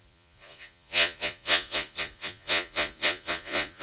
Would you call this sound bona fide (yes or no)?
no